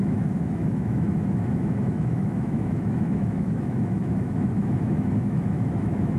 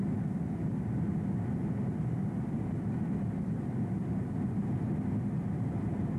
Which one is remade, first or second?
first